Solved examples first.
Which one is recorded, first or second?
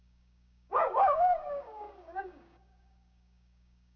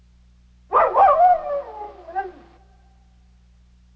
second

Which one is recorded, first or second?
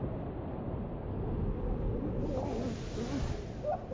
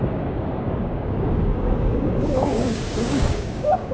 first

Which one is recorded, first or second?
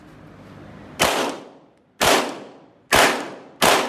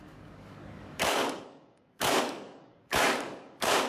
first